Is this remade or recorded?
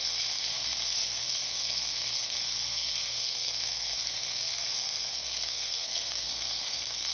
remade